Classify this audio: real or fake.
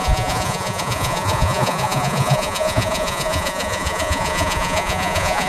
fake